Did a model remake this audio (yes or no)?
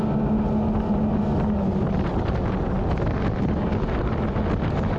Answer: no